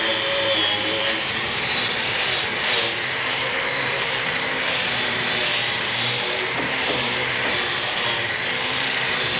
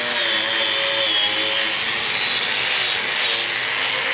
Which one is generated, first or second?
first